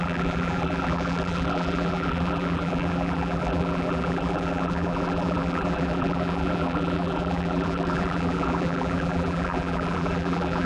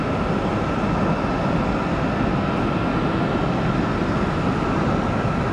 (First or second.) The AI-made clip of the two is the first